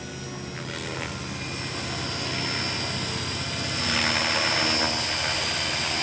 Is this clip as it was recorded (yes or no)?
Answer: yes